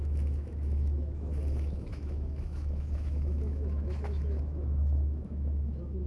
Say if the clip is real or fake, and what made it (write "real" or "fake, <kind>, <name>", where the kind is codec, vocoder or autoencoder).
fake, autoencoder, DAC-VAE